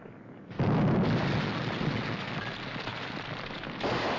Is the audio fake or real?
real